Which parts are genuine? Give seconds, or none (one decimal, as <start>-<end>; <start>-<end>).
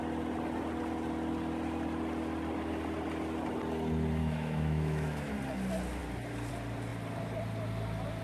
0.0-4.2; 5.3-8.2